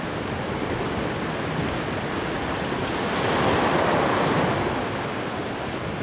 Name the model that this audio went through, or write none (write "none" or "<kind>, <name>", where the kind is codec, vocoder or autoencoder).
none